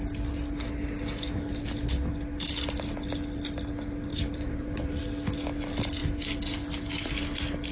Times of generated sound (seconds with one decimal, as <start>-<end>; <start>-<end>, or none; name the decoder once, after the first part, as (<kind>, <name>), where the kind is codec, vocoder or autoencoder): 4.1-5.0 (vocoder, BigVGAN v2)